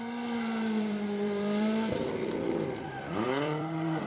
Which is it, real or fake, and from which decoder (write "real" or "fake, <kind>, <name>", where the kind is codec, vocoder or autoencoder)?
fake, vocoder, BigVGAN v2